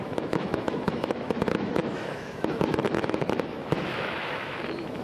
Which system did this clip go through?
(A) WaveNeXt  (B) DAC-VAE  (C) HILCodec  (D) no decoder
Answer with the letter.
B